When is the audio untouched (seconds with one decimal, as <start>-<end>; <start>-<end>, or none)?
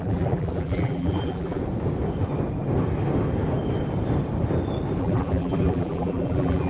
1.6-5.0